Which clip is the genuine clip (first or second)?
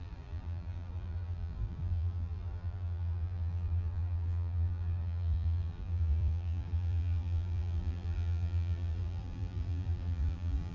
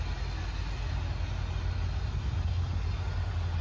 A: second